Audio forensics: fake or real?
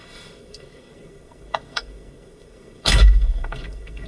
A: fake